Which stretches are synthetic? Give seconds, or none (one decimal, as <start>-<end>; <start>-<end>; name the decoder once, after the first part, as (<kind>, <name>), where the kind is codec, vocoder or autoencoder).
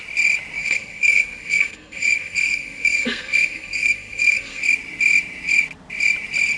0.6-4.6 (codec, SNAC)